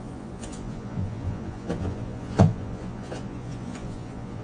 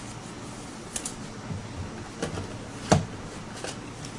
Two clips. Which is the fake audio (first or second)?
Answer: first